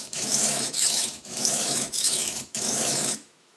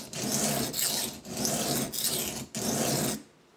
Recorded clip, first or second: second